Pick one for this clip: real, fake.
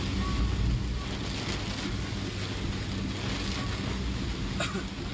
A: real